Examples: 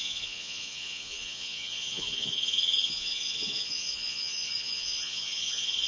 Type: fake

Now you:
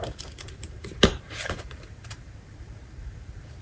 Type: fake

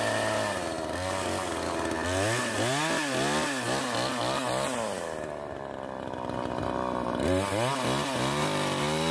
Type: real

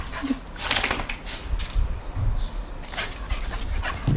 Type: real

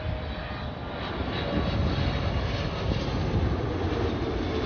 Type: real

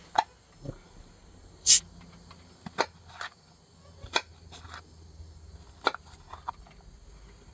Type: real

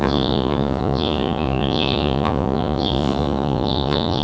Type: fake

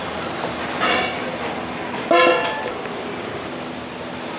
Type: real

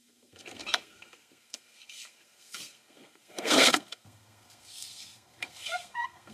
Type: fake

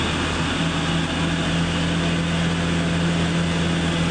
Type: real